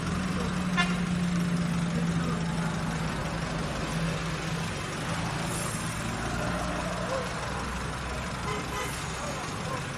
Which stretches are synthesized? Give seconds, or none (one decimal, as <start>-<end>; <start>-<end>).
none